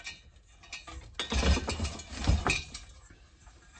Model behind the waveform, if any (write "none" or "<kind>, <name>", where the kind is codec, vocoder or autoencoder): none